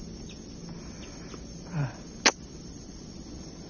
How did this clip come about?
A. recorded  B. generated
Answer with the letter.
A